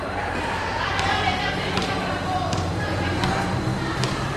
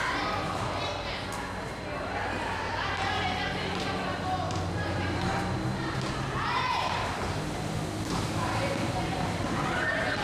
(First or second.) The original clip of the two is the second